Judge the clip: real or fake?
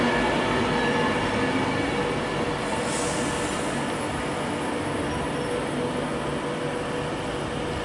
real